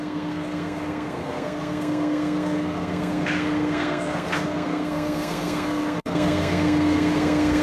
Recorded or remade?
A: remade